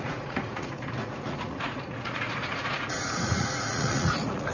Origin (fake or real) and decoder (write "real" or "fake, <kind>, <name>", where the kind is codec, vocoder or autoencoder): fake, vocoder, Vocos